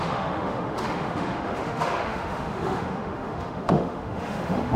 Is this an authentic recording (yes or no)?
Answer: no